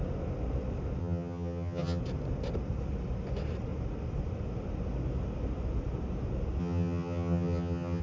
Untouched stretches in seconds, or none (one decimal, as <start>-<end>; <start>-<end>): 0.0-1.0; 2.0-6.6